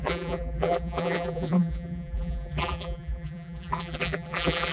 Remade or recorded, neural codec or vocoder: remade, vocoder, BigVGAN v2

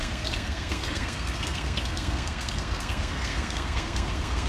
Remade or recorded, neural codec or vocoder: remade, codec, SNAC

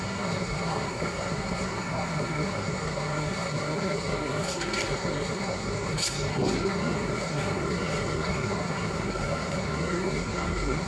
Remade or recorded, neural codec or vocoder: remade, codec, SNAC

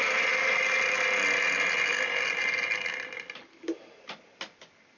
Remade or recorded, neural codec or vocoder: recorded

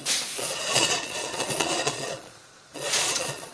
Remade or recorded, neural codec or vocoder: remade, vocoder, Vocos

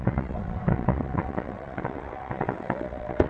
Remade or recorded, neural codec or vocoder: remade, vocoder, WaveNeXt